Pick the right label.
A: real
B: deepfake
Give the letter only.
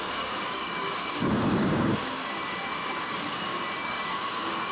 B